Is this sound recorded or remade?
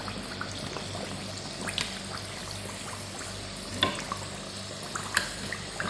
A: recorded